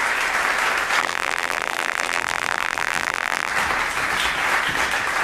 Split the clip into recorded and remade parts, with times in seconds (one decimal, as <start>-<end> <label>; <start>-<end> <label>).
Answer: 0.0-1.0 recorded; 1.0-3.5 remade; 3.5-5.2 recorded